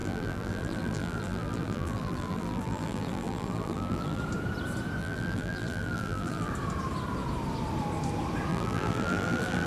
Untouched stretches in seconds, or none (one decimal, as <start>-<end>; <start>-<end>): 4.2-5.0; 6.5-8.5